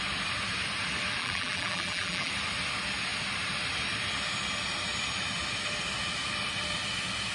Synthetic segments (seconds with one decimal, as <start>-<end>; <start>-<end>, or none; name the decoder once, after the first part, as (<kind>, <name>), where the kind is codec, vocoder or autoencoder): 1.2-2.3 (vocoder, BigVGAN v2)